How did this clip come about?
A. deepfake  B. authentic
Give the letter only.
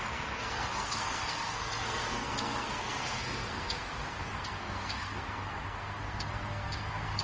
A